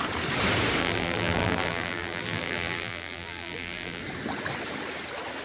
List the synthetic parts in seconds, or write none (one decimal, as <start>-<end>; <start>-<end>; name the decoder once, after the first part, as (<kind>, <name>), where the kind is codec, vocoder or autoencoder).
0.8-4.0 (vocoder, BigVGAN v2)